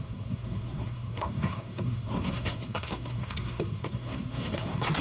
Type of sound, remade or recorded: remade